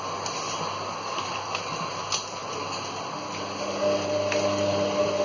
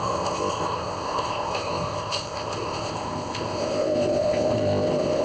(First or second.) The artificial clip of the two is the second